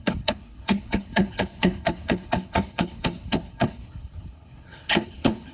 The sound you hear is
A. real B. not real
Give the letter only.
B